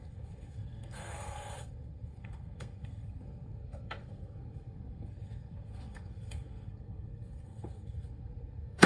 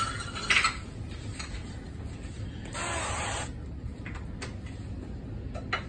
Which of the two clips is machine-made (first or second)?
first